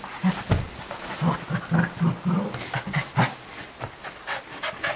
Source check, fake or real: real